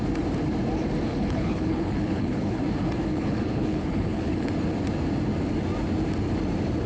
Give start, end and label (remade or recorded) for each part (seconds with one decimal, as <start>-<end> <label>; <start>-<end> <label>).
0.0-1.1 recorded; 1.1-2.6 remade; 2.6-3.1 recorded; 3.1-4.5 remade; 4.5-6.9 recorded